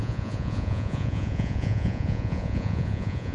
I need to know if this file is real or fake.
fake